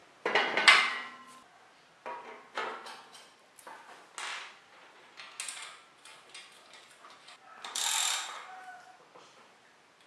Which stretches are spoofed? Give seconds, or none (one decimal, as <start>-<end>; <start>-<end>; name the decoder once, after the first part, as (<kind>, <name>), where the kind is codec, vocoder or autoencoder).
none